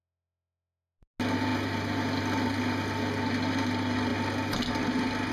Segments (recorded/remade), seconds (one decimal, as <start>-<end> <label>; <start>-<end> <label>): 0.0-5.3 recorded

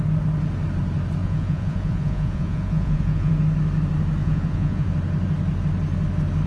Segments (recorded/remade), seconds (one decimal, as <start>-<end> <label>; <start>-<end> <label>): 0.0-1.2 recorded; 1.2-3.3 remade; 3.3-4.2 recorded; 4.2-4.9 remade; 4.9-6.5 recorded

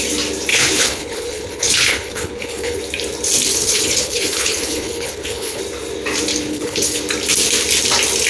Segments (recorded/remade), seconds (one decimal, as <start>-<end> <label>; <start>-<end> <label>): 0.0-0.5 recorded; 0.5-2.8 remade; 2.8-3.5 recorded; 3.5-5.6 remade; 5.6-6.5 recorded; 6.5-7.0 remade; 7.0-8.3 recorded

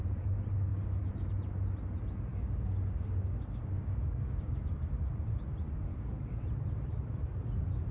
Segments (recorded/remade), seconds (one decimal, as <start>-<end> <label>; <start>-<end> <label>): 0.0-0.7 recorded; 0.7-1.3 remade; 1.3-2.3 recorded; 2.3-5.4 remade; 5.4-5.9 recorded; 5.9-6.4 remade; 6.4-7.9 recorded

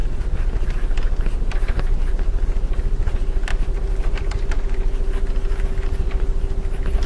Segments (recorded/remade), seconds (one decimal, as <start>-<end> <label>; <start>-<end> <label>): 0.0-2.1 remade; 2.1-3.5 recorded; 3.5-5.6 remade; 5.6-7.1 recorded